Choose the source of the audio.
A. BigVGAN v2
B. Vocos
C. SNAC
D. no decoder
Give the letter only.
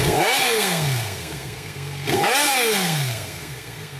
C